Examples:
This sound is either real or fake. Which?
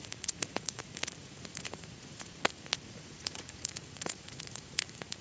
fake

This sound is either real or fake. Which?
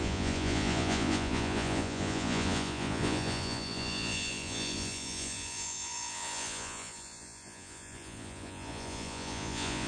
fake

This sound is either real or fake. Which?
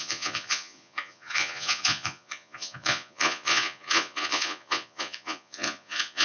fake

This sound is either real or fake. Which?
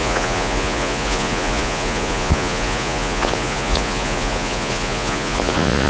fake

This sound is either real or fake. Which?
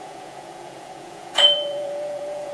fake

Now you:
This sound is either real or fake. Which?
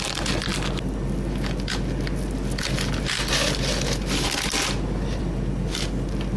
real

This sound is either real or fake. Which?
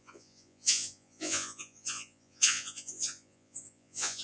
fake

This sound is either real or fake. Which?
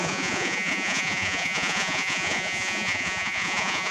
fake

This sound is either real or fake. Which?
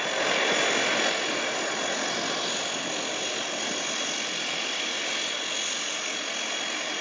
real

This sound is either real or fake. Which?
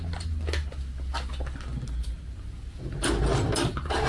real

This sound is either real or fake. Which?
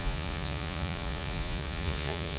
fake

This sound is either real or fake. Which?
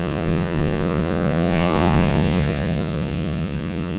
fake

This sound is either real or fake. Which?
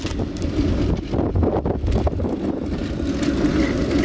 real